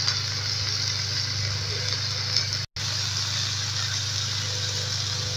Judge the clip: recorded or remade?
recorded